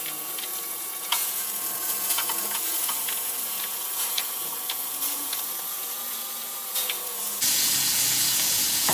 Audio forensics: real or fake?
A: fake